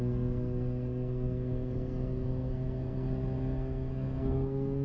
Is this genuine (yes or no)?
no